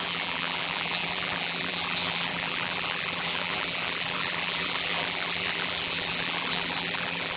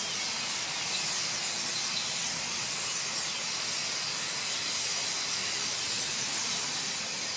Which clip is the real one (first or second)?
second